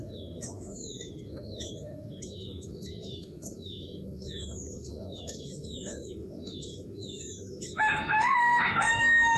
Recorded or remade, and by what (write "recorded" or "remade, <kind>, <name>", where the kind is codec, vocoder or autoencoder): remade, autoencoder, DAC-VAE